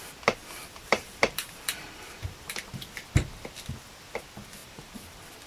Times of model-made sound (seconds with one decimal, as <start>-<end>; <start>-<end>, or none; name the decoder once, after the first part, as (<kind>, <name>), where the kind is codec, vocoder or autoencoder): 0.4-2.1 (vocoder, BigVGAN v2); 4.6-5.5